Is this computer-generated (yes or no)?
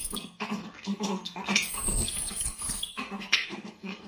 yes